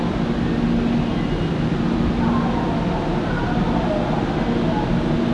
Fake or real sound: real